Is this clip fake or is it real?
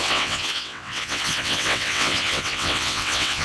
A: fake